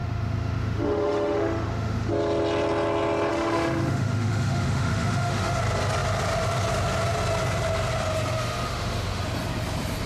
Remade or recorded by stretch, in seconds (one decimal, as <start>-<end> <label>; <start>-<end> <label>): 0.0-2.1 remade; 2.1-3.3 recorded; 3.3-5.6 remade; 5.6-8.4 recorded; 8.4-9.2 remade; 9.2-10.1 recorded